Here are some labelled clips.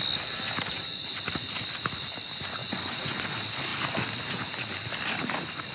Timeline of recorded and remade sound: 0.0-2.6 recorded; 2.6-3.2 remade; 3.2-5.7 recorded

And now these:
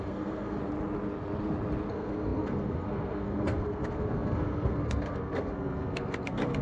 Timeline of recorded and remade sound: 0.0-0.6 remade; 0.6-1.9 recorded; 1.9-6.6 remade

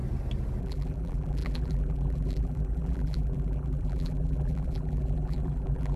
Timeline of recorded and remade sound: 0.0-0.6 recorded; 0.6-6.0 remade

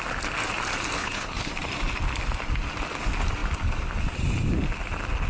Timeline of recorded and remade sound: 0.0-1.0 recorded; 1.0-1.5 remade; 1.5-5.3 recorded

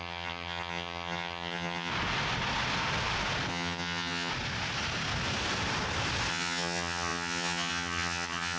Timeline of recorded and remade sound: 0.0-1.9 remade; 1.9-3.5 recorded; 3.5-4.3 remade; 4.3-6.3 recorded; 6.3-8.6 remade

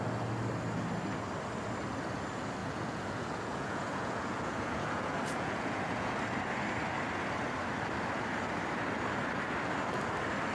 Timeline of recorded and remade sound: 0.0-2.6 recorded; 2.6-6.1 remade; 6.1-10.5 recorded

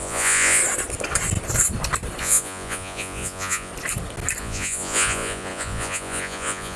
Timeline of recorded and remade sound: 0.0-0.6 remade; 0.6-2.2 recorded; 2.2-3.7 remade; 3.7-4.4 recorded; 4.4-6.8 remade

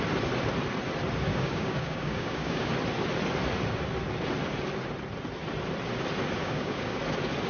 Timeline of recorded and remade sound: 0.0-1.3 recorded; 1.3-2.7 remade; 2.7-6.4 recorded; 6.4-7.0 remade; 7.0-7.5 recorded